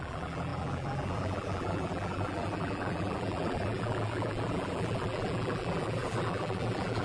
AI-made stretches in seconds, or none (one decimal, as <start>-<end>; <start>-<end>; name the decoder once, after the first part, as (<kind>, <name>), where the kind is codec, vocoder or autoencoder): 0.0-7.0 (vocoder, BigVGAN v2)